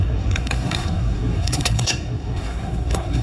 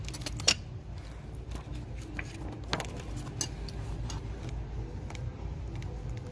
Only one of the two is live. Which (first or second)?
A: second